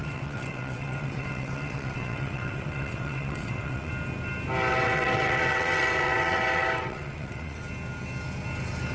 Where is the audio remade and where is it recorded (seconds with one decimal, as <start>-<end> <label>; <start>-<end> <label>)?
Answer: 0.0-3.9 remade; 3.9-4.7 recorded; 4.7-7.6 remade; 7.6-8.9 recorded